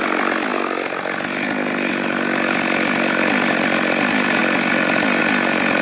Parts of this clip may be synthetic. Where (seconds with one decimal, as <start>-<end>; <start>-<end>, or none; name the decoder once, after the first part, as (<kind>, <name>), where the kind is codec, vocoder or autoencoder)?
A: none